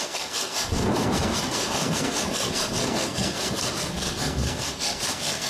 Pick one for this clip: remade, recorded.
remade